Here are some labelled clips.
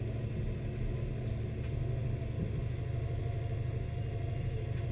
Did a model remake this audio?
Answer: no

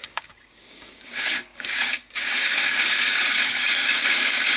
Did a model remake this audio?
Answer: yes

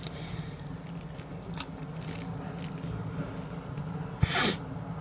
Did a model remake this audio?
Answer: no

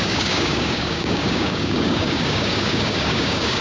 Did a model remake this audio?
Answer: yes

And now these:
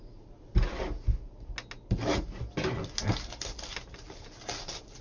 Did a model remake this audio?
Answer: no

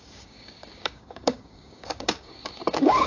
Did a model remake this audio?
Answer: yes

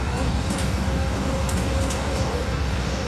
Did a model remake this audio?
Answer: yes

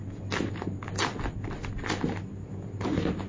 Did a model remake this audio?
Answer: no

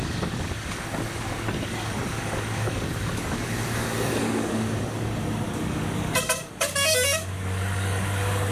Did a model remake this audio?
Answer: yes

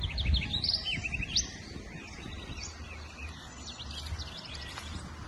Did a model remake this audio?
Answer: no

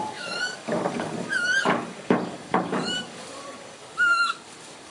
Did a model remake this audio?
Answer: yes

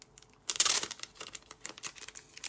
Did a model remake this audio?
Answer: no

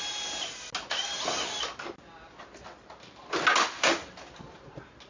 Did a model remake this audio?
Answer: no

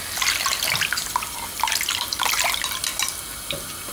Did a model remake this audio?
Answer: no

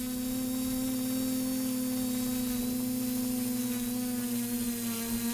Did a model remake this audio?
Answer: no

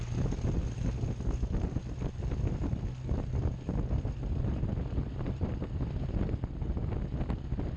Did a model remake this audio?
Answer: no